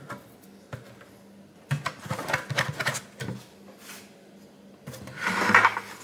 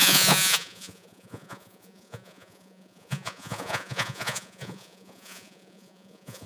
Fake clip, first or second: second